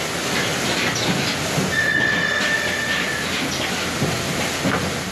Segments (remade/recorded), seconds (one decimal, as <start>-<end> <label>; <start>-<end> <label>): 0.0-0.5 remade; 0.5-2.0 recorded; 2.0-5.1 remade